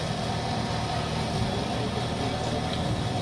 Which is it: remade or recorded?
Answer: recorded